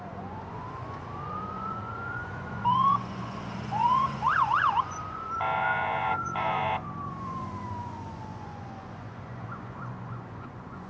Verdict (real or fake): fake